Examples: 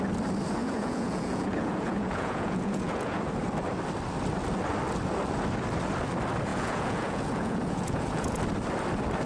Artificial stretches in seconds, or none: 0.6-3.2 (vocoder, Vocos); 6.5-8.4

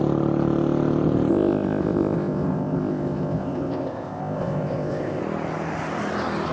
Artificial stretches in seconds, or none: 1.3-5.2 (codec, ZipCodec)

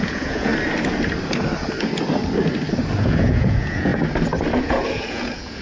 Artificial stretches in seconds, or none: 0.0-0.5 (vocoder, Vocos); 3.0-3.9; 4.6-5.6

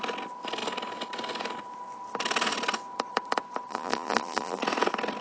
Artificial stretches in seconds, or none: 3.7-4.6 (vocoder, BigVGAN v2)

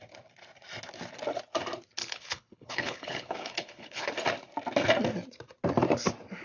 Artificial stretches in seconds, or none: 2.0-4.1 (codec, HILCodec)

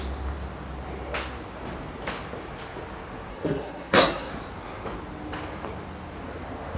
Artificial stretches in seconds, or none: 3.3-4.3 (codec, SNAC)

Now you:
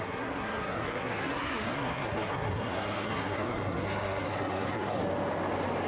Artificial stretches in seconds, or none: 0.0-5.0 (codec, SNAC)